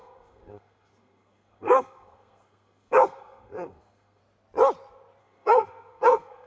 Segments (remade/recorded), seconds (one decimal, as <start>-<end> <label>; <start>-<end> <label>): 0.0-4.2 remade; 4.2-5.2 recorded; 5.2-6.5 remade